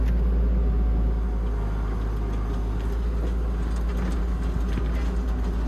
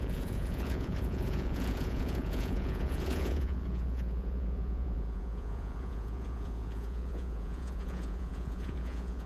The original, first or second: first